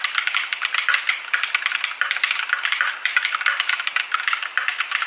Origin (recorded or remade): recorded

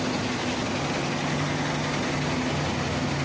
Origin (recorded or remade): recorded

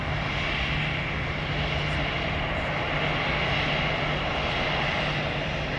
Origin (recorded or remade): recorded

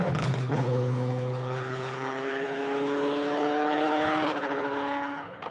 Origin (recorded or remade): remade